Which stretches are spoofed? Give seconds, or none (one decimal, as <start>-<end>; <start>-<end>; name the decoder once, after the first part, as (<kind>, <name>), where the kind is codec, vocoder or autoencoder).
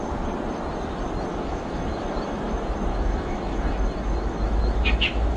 1.3-2.5 (autoencoder, DAC-VAE); 2.9-5.4